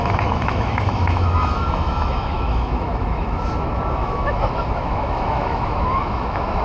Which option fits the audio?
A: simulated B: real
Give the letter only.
A